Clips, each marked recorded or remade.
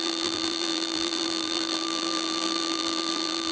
remade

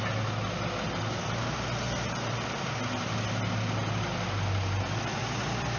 recorded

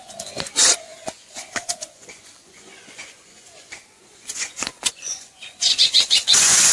remade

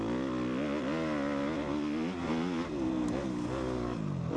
recorded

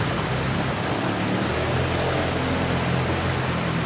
recorded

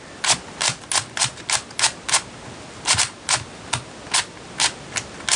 recorded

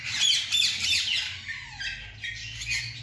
recorded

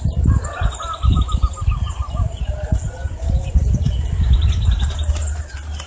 recorded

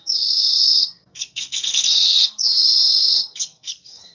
remade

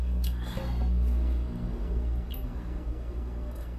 remade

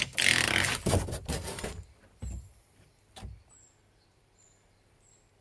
recorded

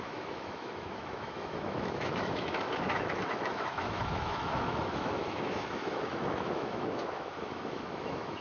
remade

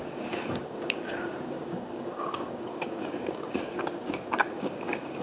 remade